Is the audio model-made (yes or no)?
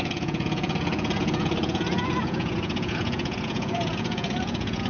yes